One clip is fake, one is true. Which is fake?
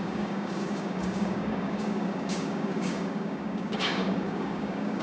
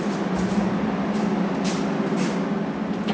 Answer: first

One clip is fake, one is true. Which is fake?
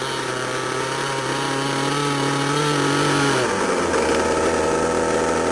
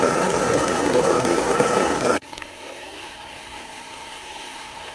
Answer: second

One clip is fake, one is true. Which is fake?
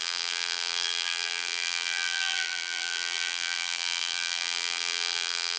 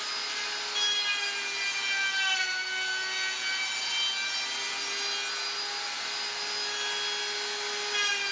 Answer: first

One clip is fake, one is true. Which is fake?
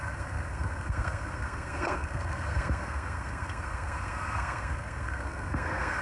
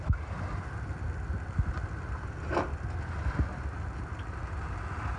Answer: first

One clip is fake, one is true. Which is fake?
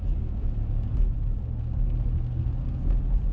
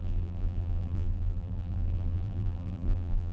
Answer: second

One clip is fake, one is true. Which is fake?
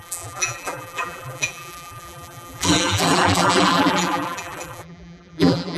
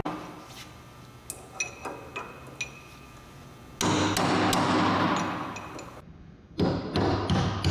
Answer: first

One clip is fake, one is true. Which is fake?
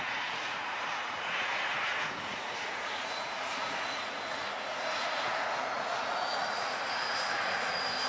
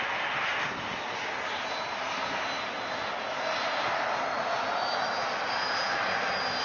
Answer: first